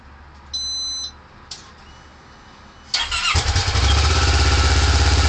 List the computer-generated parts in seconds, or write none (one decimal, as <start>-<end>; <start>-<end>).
none